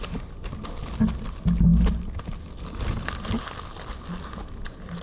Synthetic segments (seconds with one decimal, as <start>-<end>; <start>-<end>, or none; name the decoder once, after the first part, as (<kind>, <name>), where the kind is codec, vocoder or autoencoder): none